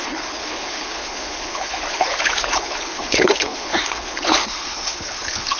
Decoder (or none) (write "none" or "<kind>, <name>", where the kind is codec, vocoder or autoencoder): codec, HILCodec